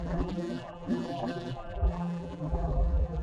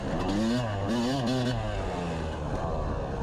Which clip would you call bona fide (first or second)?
second